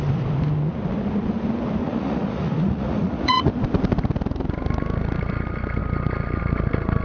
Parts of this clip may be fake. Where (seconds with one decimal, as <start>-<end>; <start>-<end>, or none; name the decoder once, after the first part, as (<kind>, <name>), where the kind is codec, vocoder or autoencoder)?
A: 1.8-3.5 (vocoder, Vocos)